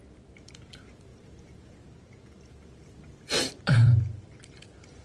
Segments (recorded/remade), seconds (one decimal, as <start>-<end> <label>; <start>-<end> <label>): 0.0-5.0 remade